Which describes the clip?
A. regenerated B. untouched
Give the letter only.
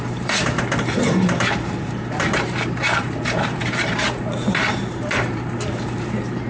A